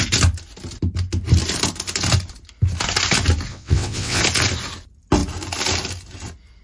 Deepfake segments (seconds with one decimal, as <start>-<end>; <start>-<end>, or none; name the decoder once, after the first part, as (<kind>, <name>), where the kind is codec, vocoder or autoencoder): 3.5-4.2 (vocoder, WaveNeXt)